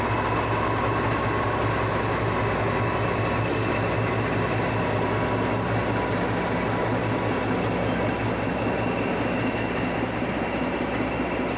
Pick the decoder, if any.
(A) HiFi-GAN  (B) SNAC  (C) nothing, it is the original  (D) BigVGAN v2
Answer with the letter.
C